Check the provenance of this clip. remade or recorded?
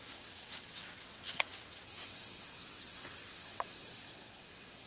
remade